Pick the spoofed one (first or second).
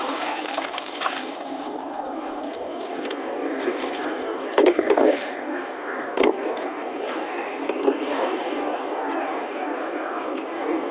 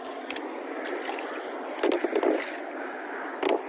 first